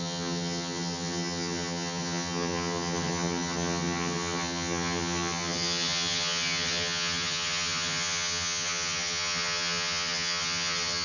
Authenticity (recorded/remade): remade